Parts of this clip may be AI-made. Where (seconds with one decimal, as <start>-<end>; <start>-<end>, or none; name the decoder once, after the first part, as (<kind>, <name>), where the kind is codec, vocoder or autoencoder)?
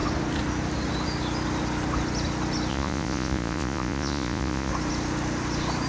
2.7-4.7 (vocoder, Vocos)